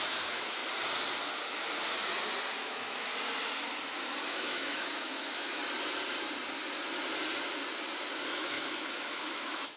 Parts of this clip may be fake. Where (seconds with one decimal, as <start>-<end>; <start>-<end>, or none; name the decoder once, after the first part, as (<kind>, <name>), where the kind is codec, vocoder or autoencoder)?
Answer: 0.0-0.6 (autoencoder, DAC-VAE); 2.6-3.1; 4.2-5.6; 8.3-9.8